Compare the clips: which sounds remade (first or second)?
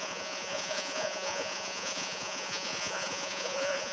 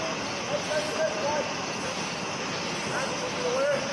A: first